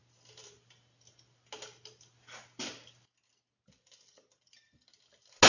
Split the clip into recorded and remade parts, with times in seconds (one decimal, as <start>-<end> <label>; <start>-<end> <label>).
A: 0.0-5.5 recorded

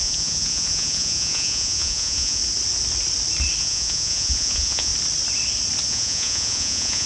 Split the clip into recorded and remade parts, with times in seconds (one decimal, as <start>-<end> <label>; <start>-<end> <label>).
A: 0.0-2.4 remade; 2.4-3.6 recorded; 3.6-4.9 remade; 4.9-5.9 recorded; 5.9-7.1 remade

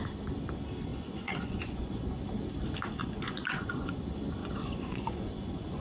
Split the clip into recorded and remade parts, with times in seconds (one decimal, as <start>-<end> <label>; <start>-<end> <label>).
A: 0.0-0.9 recorded; 0.9-2.2 remade; 2.2-3.0 recorded; 3.0-4.0 remade; 4.0-4.4 recorded; 4.4-5.8 remade

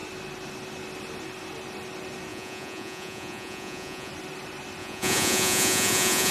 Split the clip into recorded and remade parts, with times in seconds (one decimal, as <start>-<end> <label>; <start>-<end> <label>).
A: 0.0-2.3 recorded; 2.3-4.1 remade; 4.1-4.8 recorded; 4.8-6.3 remade

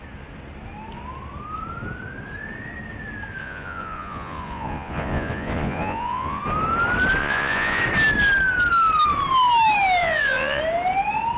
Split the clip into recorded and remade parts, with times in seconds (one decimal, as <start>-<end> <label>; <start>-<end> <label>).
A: 0.0-3.4 recorded; 3.4-6.4 remade; 6.4-7.2 recorded; 7.2-7.8 remade; 7.8-10.0 recorded; 10.0-10.6 remade; 10.6-11.4 recorded